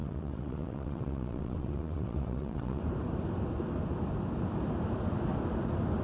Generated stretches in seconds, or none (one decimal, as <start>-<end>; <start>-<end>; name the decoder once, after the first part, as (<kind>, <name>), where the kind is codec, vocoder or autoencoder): 0.0-2.8 (vocoder, WaveNeXt)